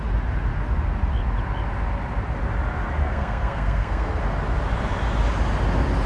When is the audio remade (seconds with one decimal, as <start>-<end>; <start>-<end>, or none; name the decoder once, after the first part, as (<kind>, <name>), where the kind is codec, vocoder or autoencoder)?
3.0-4.2 (codec, SNAC)